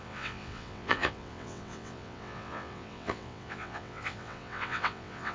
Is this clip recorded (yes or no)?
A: no